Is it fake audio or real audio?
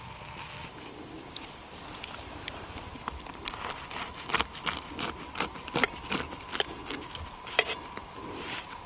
real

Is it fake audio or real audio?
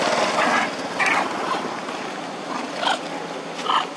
real